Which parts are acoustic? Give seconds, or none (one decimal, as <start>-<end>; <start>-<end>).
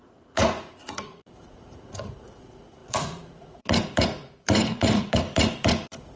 none